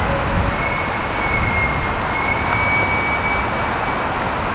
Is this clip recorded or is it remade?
recorded